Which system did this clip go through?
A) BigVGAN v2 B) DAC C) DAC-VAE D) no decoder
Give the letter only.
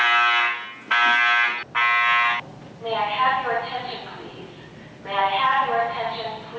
D